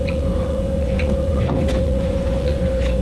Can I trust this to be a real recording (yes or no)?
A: no